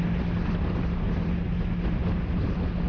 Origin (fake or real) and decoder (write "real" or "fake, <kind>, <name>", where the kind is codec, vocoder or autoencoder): real